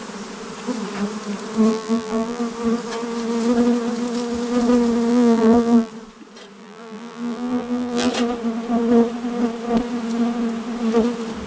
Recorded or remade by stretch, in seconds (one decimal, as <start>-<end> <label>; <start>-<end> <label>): 0.0-1.7 recorded; 1.7-2.4 remade; 2.4-5.1 recorded; 5.1-5.9 remade; 5.9-6.6 recorded; 6.6-8.1 remade; 8.1-11.5 recorded